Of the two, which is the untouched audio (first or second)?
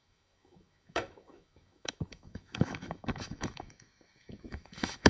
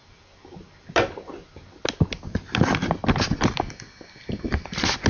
second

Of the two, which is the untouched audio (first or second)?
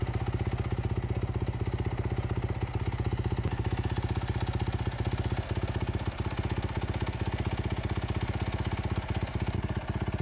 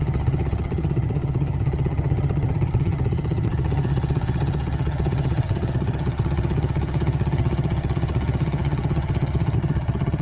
first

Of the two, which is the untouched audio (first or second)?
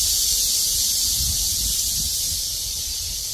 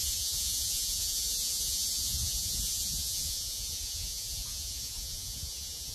first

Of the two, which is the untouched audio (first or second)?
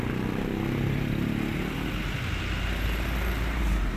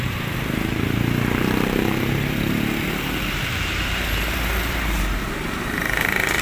first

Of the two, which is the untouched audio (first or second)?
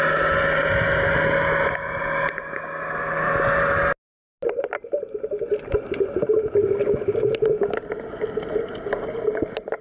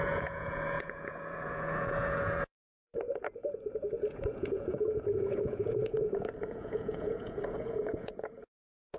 first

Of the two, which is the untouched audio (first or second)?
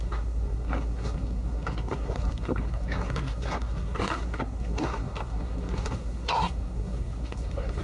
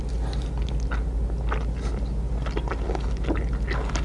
second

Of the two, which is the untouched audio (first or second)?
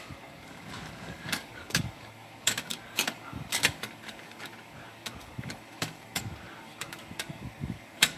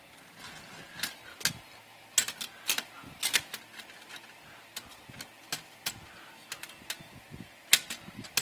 second